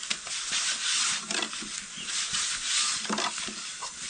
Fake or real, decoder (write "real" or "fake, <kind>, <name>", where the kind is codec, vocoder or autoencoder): real